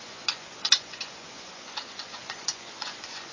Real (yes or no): no